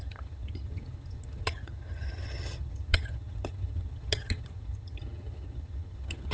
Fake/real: fake